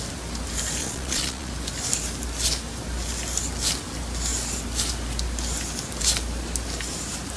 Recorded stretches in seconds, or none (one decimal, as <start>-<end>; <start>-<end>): 0.0-0.8; 1.5-7.4